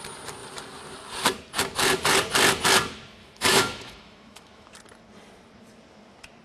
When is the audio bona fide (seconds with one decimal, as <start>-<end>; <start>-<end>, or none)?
0.0-3.2; 4.7-6.4